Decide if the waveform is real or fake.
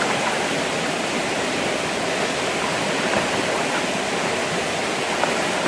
real